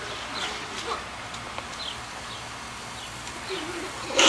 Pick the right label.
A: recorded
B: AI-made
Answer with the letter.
A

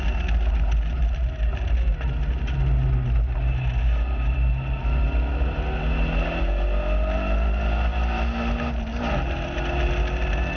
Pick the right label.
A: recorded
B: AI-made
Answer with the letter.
A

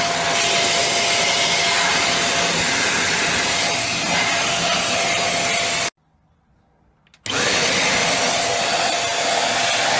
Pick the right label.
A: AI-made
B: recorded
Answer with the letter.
B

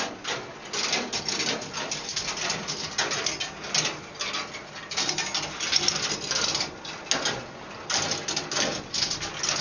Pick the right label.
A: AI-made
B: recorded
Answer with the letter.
B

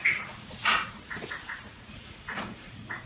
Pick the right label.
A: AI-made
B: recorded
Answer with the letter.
A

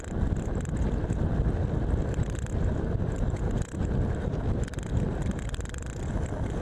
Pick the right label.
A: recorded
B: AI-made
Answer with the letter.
A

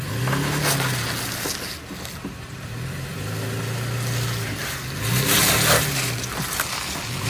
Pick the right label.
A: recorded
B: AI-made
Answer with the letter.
A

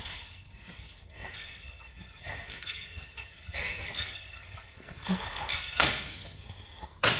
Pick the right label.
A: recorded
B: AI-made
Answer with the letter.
B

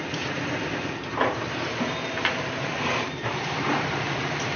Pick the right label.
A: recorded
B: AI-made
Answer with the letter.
B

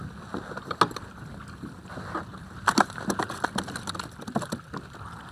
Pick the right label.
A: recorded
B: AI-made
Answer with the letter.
A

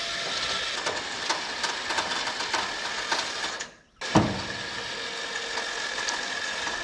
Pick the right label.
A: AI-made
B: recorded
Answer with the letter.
B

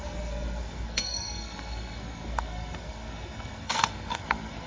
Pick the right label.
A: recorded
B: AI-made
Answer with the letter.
B